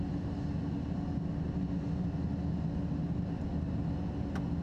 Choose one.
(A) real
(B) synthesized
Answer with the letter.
A